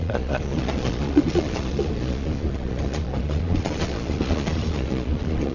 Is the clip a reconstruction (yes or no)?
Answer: yes